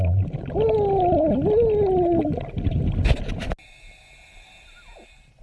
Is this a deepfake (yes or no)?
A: no